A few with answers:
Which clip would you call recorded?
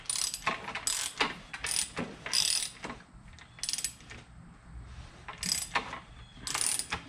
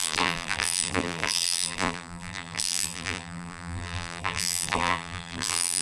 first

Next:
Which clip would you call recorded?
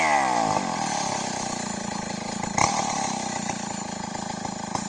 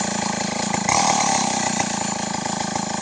first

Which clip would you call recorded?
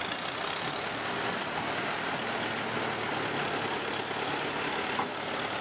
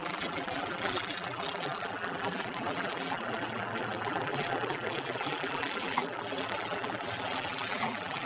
first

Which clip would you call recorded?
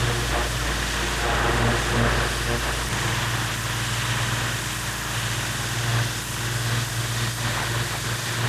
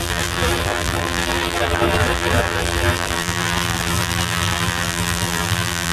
first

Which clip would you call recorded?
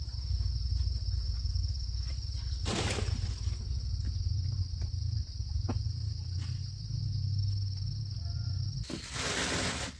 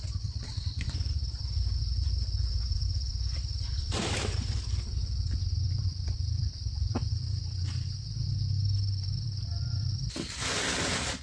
first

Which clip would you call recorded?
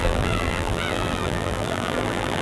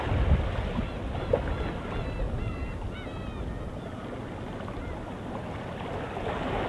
second